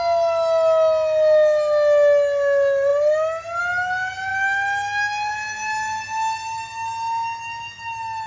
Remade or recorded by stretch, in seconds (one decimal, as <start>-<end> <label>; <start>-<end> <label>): 0.0-8.3 recorded